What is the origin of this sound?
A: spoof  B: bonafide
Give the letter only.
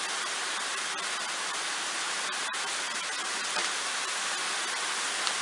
B